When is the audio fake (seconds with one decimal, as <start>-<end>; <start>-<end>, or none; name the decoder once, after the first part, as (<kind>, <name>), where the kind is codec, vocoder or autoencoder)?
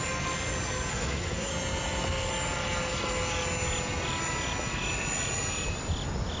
0.9-1.5 (codec, SNAC)